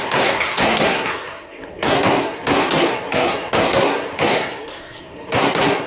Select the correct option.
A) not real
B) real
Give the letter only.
A